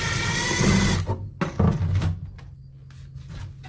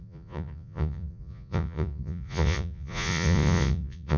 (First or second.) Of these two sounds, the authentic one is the first